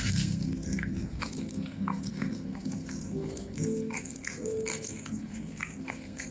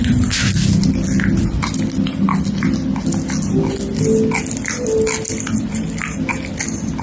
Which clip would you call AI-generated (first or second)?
first